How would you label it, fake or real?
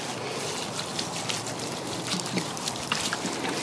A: real